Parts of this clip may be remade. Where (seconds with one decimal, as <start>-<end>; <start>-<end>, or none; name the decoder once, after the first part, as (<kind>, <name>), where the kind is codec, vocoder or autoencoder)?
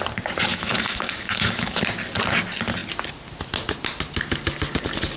0.5-1.8 (autoencoder, DAC-VAE)